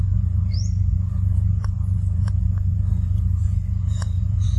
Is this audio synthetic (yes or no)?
yes